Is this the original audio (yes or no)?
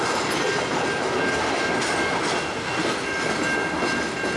yes